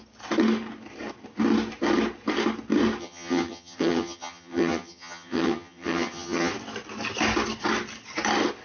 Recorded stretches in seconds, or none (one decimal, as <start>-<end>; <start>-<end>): 0.0-3.0; 6.5-8.6